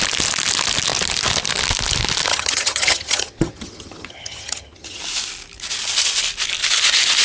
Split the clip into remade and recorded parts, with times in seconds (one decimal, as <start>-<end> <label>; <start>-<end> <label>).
0.0-2.3 recorded; 2.3-5.0 remade; 5.0-7.2 recorded